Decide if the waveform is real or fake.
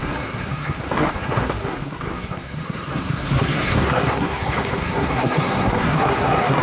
fake